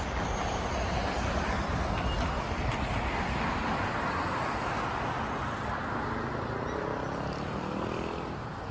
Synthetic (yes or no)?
no